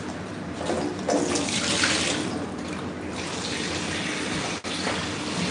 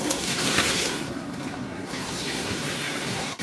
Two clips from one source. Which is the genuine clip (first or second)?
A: first